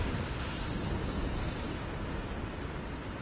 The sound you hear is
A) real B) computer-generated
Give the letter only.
A